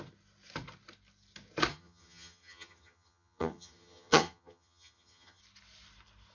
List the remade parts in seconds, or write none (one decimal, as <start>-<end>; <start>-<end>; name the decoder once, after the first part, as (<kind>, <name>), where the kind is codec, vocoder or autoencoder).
1.7-5.4 (vocoder, HiFi-GAN)